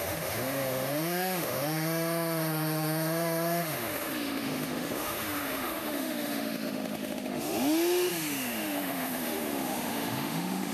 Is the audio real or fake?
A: fake